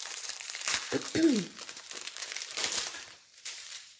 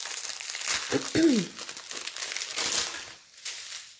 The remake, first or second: first